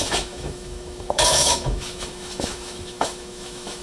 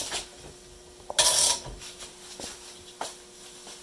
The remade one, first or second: first